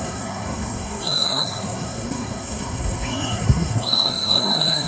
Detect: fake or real fake